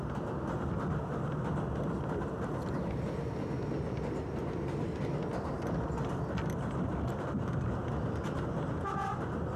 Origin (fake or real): real